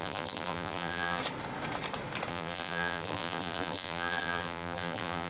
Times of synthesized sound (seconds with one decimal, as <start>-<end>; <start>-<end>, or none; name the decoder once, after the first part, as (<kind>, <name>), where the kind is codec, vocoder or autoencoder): 0.0-1.2 (vocoder, BigVGAN v2); 2.3-5.3